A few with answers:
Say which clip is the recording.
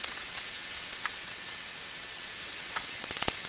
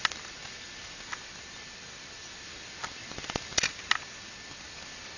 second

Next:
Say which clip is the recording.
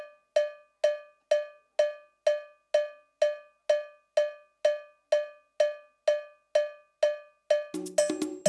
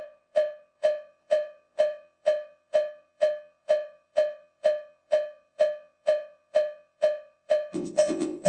first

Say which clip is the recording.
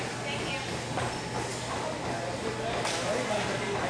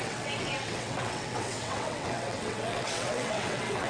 first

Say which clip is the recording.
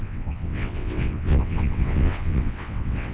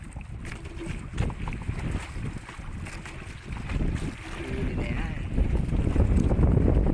second